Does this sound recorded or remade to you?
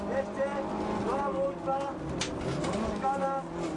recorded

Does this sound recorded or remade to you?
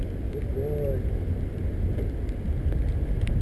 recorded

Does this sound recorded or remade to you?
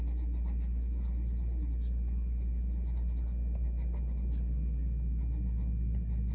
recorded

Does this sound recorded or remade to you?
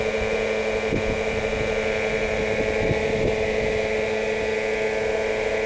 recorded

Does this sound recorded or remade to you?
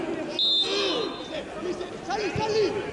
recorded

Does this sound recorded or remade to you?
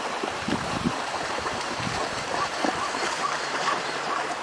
remade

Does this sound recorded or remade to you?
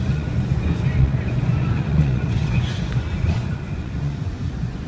remade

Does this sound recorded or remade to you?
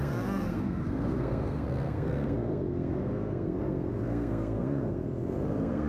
remade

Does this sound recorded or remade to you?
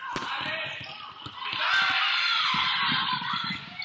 recorded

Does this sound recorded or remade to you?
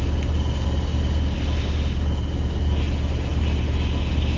recorded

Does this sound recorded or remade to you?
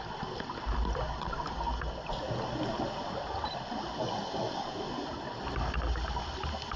recorded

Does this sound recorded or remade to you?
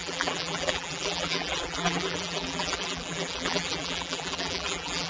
remade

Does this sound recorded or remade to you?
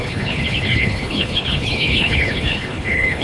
remade